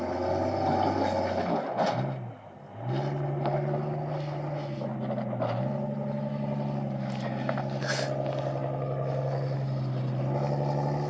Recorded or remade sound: recorded